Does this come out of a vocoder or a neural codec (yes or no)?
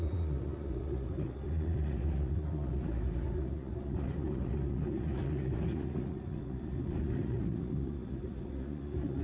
yes